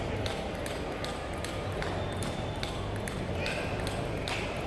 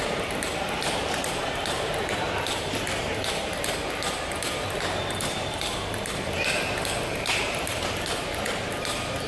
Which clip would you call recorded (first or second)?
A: first